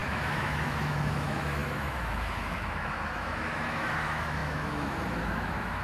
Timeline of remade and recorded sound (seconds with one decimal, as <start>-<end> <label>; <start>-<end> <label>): 0.0-5.8 remade